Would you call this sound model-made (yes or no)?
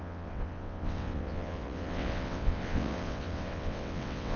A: yes